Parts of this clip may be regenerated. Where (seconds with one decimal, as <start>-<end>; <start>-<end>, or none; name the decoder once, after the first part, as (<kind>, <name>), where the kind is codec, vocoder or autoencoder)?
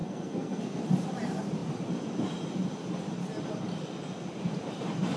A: 0.0-0.8 (codec, SNAC)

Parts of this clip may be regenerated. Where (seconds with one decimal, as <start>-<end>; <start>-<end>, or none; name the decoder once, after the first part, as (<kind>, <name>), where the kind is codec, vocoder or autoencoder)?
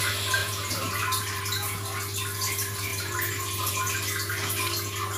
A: 0.4-1.4 (vocoder, BigVGAN v2); 2.9-3.7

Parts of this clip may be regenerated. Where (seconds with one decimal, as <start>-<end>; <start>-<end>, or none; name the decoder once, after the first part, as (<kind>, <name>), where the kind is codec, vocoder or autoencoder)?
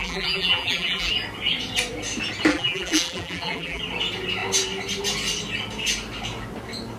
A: 0.0-1.1 (vocoder, BigVGAN v2); 2.5-3.8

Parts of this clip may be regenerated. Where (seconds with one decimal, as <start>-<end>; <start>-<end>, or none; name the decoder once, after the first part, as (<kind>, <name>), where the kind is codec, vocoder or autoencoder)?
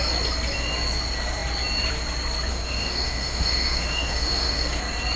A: 2.5-4.8 (autoencoder, DAC-VAE)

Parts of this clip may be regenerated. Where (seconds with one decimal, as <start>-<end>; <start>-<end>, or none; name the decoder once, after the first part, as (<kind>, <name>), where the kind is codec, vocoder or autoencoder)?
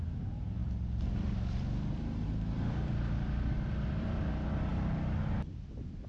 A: 0.6-4.3 (vocoder, BigVGAN v2)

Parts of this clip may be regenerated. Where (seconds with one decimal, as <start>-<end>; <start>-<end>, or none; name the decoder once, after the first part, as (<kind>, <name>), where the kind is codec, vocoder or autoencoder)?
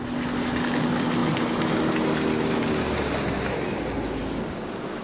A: none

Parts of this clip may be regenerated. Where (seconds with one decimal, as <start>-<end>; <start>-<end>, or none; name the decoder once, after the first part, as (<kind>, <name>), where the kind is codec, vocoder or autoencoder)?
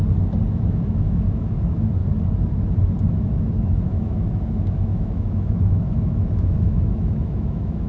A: 0.5-2.0 (autoencoder, DAC-VAE); 3.2-7.9